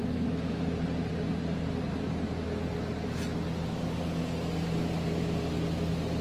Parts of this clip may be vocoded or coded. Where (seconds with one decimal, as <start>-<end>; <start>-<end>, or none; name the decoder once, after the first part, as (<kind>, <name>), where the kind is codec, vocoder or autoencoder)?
0.0-0.8 (autoencoder, DAC-VAE)